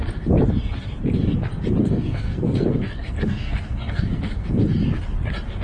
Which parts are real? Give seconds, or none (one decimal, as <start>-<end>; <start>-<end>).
0.0-1.8; 4.6-5.6